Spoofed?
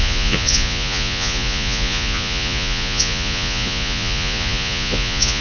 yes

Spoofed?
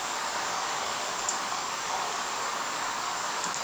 yes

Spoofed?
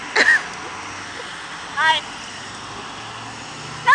no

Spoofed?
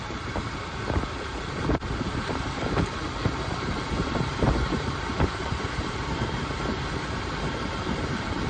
yes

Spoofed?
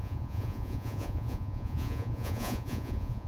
yes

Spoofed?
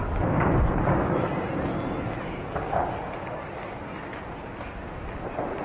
no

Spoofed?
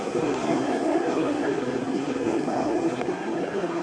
yes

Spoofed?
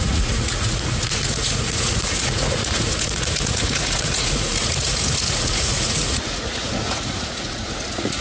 yes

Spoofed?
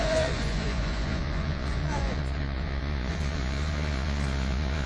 yes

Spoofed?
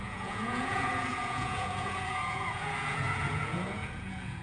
yes